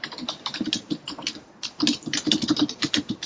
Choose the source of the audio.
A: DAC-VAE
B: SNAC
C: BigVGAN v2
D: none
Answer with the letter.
C